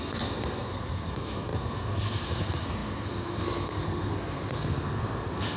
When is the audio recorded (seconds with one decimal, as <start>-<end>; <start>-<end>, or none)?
none